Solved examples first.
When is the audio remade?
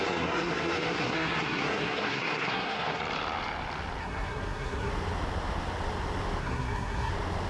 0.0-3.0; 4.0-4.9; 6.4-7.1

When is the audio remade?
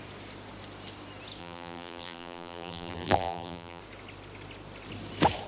1.4-3.8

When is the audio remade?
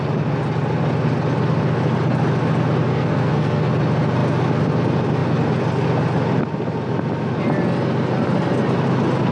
2.9-3.7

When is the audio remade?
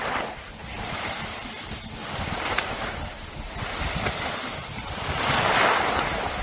0.6-1.1; 2.0-3.6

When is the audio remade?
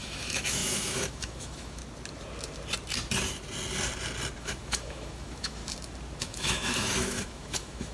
0.0-1.8; 4.4-5.6; 6.2-7.9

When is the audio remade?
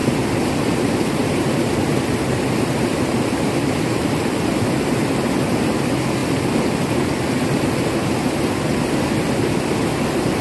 1.2-4.5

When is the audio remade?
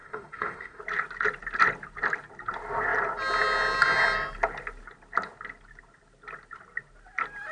0.0-0.8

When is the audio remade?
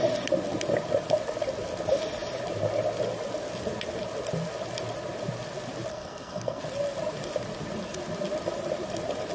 5.9-6.6